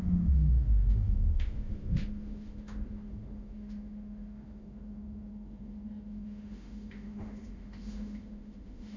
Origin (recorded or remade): remade